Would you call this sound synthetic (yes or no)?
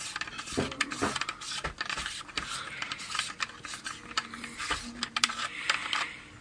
yes